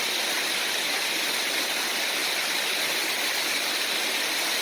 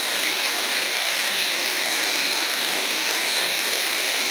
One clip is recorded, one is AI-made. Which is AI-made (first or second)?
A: second